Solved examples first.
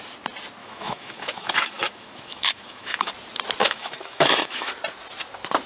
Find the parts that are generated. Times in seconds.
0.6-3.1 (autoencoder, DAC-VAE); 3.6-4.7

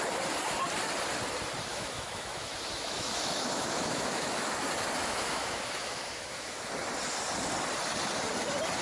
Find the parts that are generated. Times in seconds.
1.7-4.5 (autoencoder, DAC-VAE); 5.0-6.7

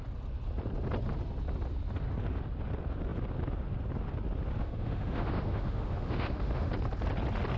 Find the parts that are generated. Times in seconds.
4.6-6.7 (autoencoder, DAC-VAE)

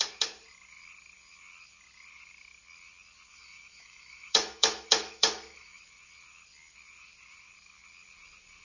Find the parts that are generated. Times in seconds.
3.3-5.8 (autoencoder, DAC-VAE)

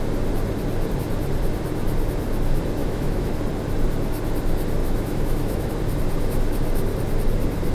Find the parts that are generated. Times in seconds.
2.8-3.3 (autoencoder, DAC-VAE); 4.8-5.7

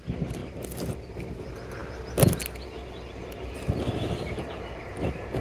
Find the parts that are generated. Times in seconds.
none

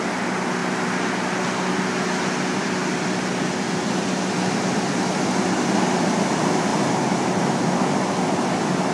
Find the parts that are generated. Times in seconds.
none